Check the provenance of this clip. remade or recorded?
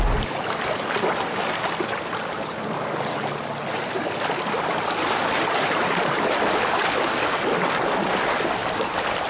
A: recorded